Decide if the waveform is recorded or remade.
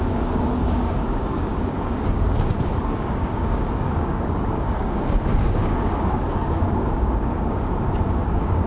remade